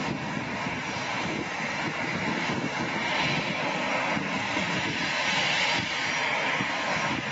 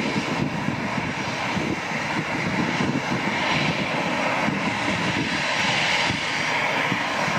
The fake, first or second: second